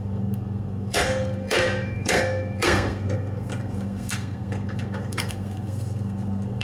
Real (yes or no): no